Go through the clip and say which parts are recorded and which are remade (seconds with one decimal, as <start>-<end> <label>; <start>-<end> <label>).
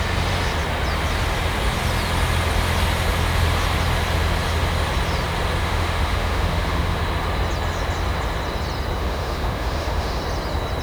0.0-5.6 recorded; 5.6-7.0 remade; 7.0-9.0 recorded; 9.0-10.2 remade; 10.2-10.8 recorded